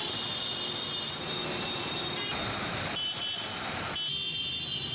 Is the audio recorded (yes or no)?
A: yes